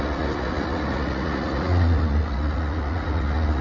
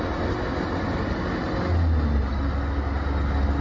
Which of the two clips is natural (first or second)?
second